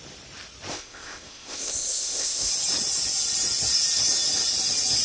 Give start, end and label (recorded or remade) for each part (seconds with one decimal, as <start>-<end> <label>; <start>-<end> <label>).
0.0-0.7 recorded; 0.7-2.5 remade; 2.5-5.0 recorded